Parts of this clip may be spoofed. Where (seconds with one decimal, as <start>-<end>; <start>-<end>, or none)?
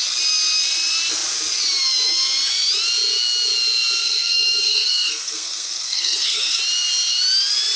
4.0-6.6